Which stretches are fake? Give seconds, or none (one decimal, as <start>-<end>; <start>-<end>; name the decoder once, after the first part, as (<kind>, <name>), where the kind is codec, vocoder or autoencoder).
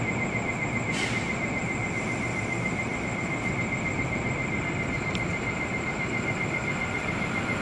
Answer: none